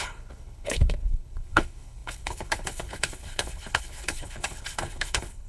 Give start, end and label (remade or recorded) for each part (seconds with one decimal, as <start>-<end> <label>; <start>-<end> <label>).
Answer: 0.0-5.5 remade